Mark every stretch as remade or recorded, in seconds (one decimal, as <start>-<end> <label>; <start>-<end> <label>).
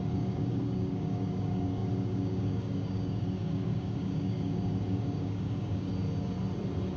0.0-5.9 remade; 5.9-7.0 recorded